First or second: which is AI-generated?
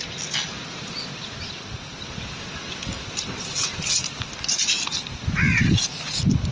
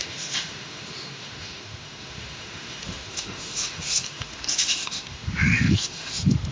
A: second